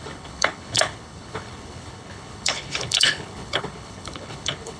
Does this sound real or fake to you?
fake